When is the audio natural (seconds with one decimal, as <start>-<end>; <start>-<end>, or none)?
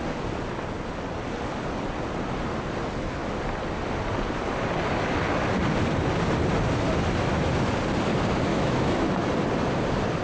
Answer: 0.0-8.5; 9.3-10.2